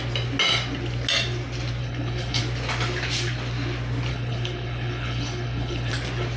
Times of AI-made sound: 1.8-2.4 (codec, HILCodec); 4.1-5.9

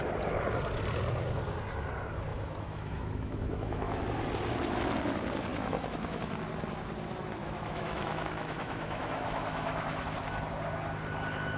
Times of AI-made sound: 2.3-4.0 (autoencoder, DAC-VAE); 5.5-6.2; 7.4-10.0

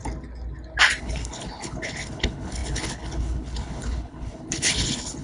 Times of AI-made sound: 1.0-5.2 (codec, HILCodec)